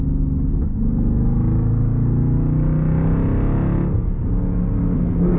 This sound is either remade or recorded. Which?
recorded